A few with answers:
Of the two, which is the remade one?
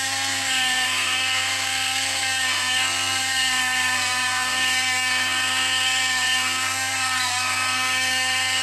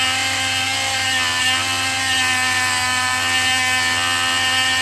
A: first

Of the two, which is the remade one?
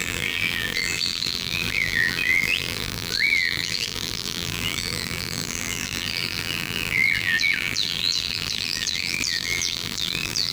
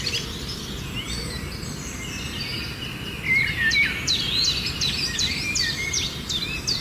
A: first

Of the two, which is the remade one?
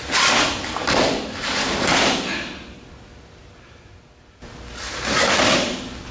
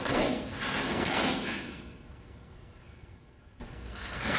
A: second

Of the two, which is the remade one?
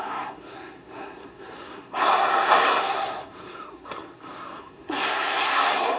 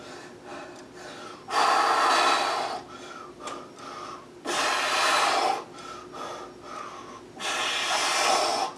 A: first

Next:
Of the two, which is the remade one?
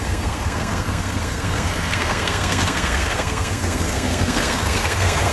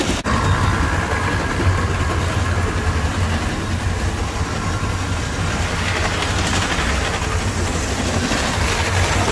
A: first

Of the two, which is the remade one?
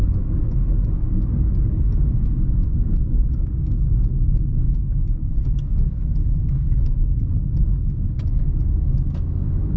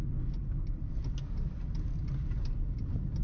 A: first